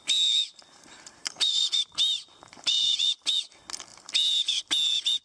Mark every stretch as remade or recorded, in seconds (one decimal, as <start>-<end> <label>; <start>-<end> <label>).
0.0-0.6 recorded; 0.6-3.5 remade; 3.5-3.9 recorded; 3.9-4.7 remade; 4.7-5.2 recorded